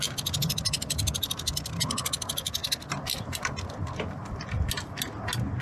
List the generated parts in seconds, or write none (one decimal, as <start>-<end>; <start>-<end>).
0.4-1.8; 2.6-4.7